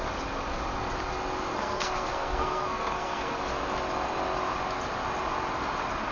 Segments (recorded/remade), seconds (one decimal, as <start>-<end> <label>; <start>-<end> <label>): 0.0-1.5 recorded; 1.5-3.4 remade; 3.4-6.1 recorded